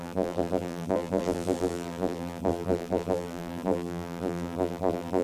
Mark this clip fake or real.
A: fake